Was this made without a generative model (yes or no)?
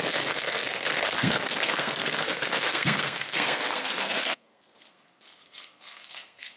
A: no